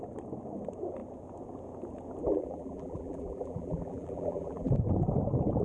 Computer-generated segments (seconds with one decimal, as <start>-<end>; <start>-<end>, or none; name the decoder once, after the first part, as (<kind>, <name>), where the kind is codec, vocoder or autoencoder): 2.2-4.7 (vocoder, BigVGAN v2)